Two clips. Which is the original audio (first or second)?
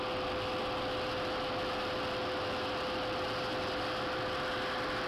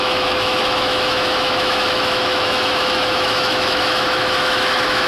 first